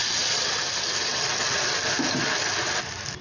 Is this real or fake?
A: real